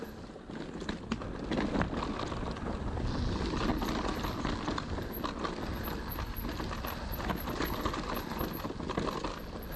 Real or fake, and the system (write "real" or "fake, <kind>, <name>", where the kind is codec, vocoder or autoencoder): real